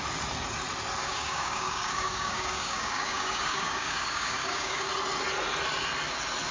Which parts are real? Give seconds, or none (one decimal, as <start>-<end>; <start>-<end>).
0.0-1.0; 4.9-6.5